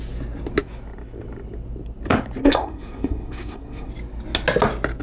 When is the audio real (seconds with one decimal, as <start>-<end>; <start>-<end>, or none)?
0.0-2.4; 3.9-5.0